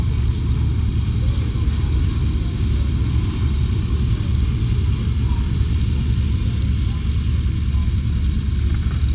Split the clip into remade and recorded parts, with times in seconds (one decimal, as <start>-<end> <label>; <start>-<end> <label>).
0.0-9.1 recorded

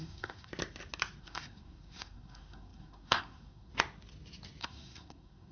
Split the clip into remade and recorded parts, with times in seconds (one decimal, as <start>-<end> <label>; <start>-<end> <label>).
0.0-0.5 remade; 0.5-1.2 recorded; 1.2-3.7 remade; 3.7-4.6 recorded; 4.6-5.5 remade

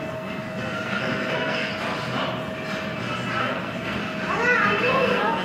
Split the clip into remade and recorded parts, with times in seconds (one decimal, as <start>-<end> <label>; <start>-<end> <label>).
0.0-1.7 remade; 1.7-3.4 recorded; 3.4-4.0 remade; 4.0-4.8 recorded; 4.8-5.4 remade

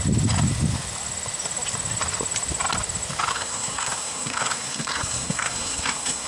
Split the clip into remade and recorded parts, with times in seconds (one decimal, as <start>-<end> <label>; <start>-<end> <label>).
0.0-3.3 recorded; 3.3-6.3 remade